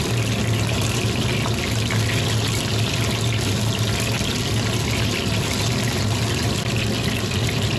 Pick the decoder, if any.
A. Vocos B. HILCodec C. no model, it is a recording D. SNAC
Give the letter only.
C